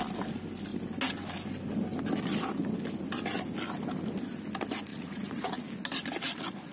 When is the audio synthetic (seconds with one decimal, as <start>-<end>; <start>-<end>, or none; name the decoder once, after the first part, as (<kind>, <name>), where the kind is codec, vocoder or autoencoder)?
4.9-5.6 (vocoder, Vocos)